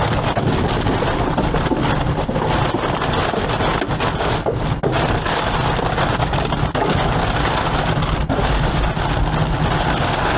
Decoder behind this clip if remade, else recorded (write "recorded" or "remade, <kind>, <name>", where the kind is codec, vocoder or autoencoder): recorded